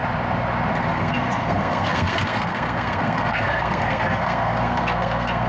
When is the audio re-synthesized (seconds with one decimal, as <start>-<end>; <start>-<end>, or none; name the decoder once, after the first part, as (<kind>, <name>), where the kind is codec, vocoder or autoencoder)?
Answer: 0.9-5.5 (codec, SNAC)